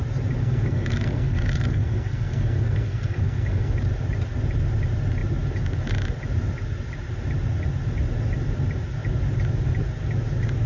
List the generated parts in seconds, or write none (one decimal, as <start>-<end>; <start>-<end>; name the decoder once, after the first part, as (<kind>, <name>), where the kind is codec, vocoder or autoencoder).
0.4-3.7 (codec, SNAC)